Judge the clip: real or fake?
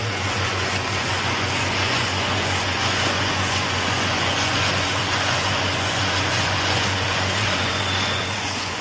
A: fake